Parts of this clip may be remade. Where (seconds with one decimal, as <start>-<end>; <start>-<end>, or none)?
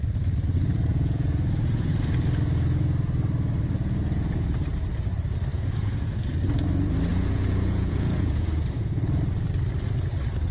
0.9-1.9; 5.5-6.2; 7.1-9.2